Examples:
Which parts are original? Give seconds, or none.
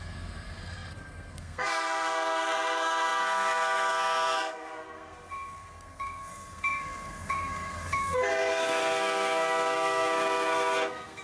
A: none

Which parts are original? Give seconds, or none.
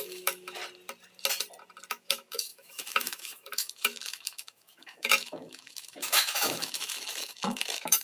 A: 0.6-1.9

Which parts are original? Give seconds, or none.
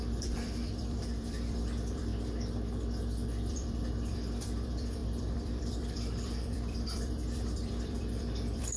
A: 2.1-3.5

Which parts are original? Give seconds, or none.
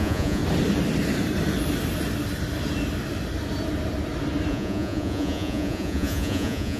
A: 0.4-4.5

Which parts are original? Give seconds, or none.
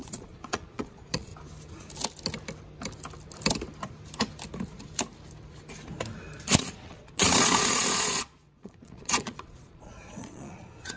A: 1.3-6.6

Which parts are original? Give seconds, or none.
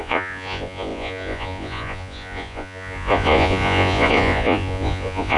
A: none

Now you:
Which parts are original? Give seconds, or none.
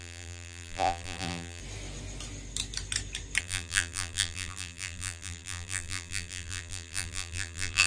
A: 1.6-3.4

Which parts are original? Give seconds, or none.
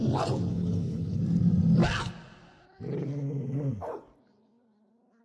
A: 0.0-0.5; 1.2-5.2